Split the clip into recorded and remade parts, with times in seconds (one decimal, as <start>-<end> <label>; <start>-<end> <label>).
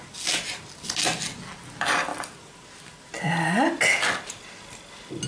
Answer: 0.0-5.3 recorded